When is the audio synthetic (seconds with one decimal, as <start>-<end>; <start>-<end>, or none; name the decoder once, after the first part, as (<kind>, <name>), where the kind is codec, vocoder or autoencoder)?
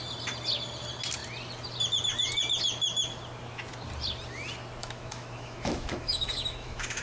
4.8-7.0 (autoencoder, DAC-VAE)